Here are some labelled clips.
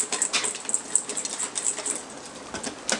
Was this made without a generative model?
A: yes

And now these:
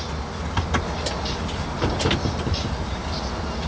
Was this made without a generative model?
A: yes